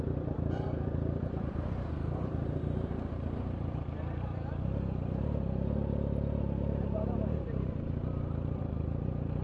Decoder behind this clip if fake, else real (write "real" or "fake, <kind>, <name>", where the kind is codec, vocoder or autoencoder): fake, vocoder, BigVGAN v2